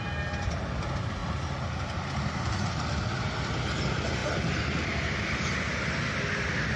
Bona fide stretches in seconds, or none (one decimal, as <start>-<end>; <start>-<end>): 0.0-6.8